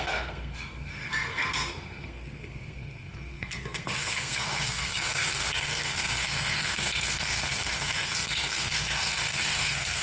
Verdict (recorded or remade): remade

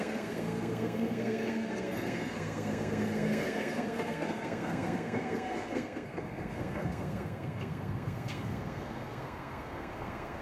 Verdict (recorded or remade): remade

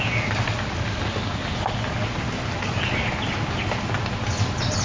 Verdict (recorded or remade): recorded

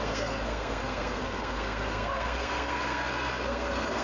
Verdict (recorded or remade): remade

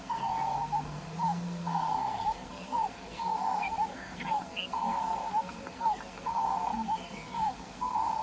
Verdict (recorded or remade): remade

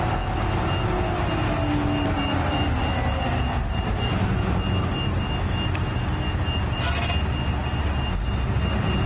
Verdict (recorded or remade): recorded